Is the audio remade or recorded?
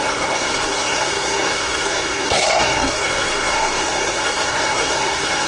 remade